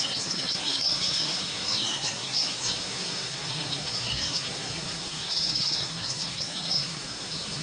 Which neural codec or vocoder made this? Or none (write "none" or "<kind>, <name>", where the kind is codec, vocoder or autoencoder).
codec, SNAC